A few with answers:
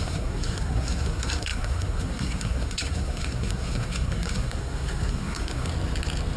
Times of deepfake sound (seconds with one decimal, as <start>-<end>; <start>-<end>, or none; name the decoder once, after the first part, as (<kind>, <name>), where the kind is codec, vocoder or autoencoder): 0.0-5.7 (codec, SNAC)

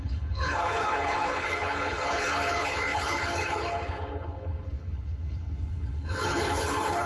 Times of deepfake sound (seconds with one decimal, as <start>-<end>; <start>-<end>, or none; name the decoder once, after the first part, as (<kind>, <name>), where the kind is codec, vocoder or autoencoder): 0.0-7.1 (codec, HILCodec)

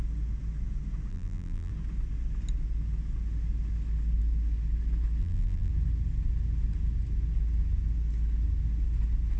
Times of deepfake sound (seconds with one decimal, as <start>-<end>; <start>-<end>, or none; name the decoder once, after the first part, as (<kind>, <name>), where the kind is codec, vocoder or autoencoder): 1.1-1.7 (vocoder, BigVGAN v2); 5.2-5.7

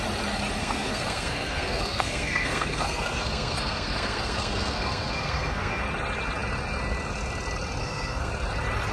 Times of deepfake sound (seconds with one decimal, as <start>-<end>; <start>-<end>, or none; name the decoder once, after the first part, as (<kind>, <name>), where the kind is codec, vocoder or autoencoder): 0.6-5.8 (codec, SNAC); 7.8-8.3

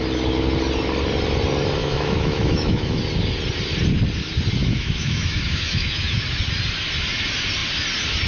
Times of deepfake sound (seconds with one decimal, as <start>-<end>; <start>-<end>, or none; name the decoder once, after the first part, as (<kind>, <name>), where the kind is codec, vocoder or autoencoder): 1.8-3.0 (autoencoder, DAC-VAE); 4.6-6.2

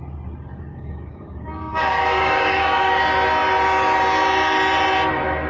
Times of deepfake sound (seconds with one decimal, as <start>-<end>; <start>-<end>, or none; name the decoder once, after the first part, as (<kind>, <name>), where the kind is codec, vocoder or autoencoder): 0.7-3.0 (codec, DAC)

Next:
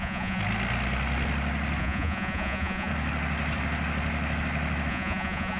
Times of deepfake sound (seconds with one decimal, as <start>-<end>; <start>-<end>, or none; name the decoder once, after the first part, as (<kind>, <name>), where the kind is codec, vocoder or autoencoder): 0.0-0.4 (vocoder, Vocos); 1.8-2.9; 4.9-5.6

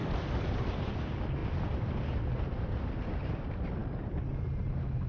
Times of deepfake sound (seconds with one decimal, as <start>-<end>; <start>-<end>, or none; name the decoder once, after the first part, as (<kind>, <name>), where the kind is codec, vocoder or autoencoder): 0.0-0.9 (vocoder, BigVGAN v2); 1.4-3.4; 3.8-4.3